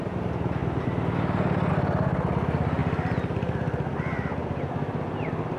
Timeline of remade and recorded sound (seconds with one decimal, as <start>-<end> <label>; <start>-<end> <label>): 0.0-5.6 recorded